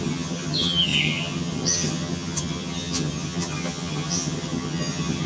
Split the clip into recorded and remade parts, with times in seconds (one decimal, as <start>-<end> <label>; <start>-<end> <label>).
0.0-5.3 remade